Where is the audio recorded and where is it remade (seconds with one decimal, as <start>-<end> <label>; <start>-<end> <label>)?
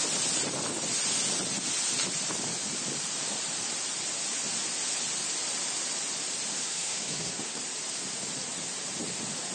0.0-6.5 recorded; 6.5-7.6 remade; 7.6-9.5 recorded